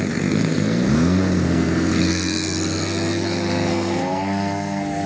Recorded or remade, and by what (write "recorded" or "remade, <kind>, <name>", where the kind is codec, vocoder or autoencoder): remade, codec, SNAC